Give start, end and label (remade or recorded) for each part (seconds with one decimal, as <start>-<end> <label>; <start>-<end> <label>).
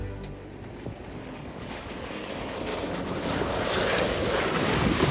0.0-1.3 recorded; 1.3-2.7 remade; 2.7-3.4 recorded; 3.4-5.1 remade